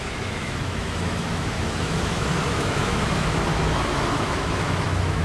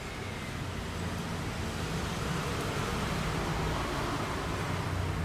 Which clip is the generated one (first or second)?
first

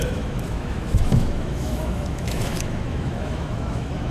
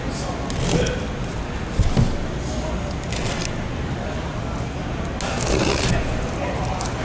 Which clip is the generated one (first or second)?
first